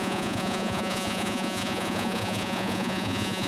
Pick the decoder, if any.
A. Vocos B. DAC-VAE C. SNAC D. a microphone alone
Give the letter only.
A